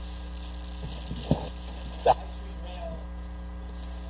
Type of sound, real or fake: real